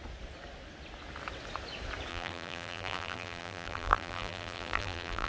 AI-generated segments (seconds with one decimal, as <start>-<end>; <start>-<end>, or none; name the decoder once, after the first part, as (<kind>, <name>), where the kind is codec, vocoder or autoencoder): 2.1-5.3 (vocoder, BigVGAN v2)